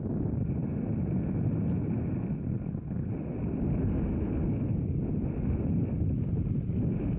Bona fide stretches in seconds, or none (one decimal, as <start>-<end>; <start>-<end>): 0.0-7.2